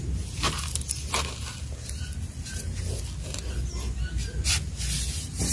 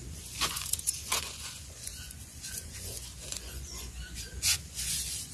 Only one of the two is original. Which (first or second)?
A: first